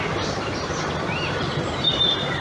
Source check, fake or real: fake